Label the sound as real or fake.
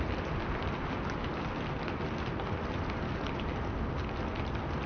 real